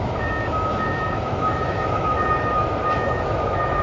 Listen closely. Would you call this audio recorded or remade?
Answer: remade